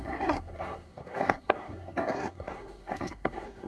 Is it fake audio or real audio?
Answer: fake